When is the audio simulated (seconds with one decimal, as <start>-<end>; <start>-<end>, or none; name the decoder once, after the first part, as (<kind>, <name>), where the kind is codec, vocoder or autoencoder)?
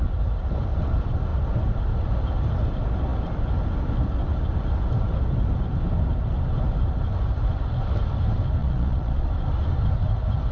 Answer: 8.6-9.3 (vocoder, Vocos)